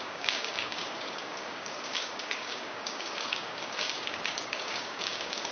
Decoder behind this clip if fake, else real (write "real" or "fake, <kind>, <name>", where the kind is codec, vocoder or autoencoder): fake, codec, DAC